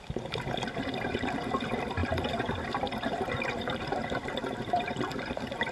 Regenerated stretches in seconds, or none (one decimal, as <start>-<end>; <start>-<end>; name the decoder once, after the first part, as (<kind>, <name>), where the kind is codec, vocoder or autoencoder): 2.0-5.7 (vocoder, BigVGAN v2)

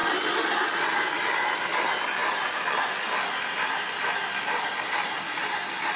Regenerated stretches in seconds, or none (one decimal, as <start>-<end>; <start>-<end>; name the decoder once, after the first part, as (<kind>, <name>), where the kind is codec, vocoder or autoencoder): 0.0-0.8 (vocoder, BigVGAN v2); 2.2-4.2

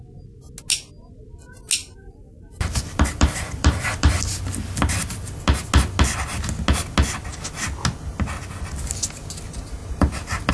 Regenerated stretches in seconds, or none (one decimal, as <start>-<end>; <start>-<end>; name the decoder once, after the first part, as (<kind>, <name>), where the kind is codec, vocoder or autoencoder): 1.8-5.4 (vocoder, BigVGAN v2)